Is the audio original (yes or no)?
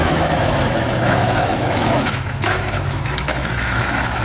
no